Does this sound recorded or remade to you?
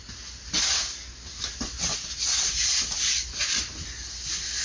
recorded